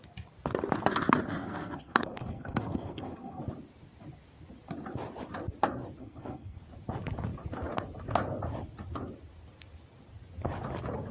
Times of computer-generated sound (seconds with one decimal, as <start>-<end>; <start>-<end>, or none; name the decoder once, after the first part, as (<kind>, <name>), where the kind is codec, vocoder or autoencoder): 1.4-3.4 (codec, SNAC); 6.0-6.6